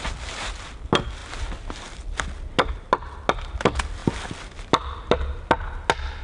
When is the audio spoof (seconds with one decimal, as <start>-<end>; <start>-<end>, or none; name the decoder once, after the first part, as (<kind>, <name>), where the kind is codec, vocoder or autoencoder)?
none